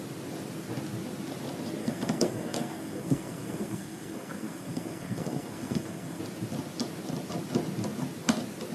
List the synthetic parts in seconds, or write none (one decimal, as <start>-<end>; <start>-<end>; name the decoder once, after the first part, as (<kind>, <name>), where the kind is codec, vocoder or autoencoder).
1.8-6.2 (codec, SNAC)